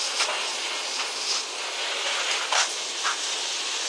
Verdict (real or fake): real